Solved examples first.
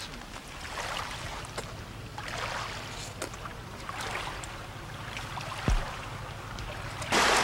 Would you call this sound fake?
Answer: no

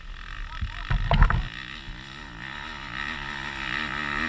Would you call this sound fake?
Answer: no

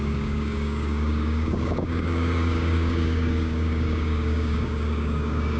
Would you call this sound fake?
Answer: yes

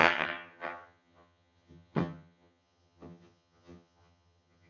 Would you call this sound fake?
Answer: yes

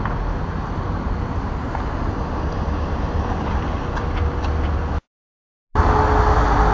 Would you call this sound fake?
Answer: no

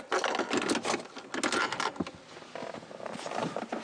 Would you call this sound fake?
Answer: no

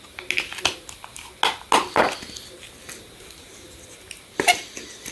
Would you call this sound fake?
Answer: no